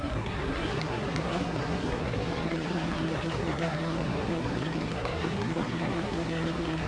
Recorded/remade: remade